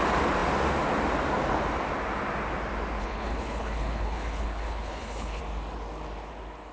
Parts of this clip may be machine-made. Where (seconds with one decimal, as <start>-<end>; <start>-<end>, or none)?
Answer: 3.0-5.4